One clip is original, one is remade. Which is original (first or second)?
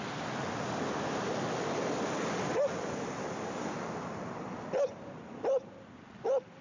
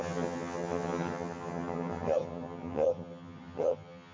first